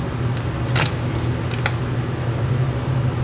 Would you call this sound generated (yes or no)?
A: no